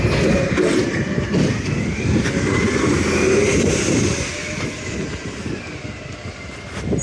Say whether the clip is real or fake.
real